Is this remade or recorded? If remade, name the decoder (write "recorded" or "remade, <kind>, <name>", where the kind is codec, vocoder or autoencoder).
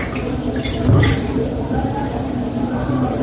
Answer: remade, vocoder, BigVGAN v2